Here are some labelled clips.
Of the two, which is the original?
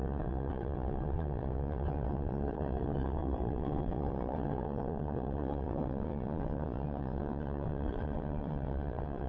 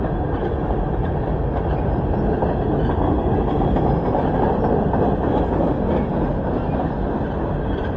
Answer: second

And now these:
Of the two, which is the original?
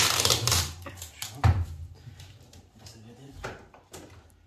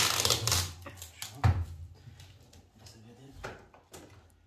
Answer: second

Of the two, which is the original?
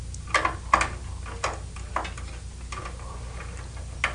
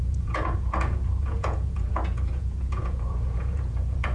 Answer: first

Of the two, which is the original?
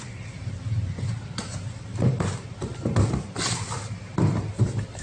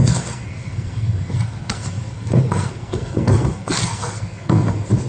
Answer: first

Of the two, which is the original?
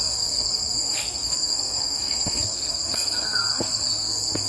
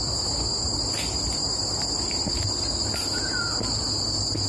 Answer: second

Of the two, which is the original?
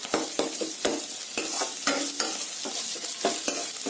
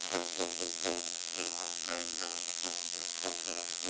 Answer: first